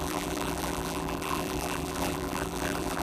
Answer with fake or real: fake